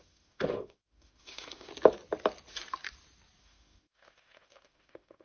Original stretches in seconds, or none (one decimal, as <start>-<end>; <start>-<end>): 1.7-3.4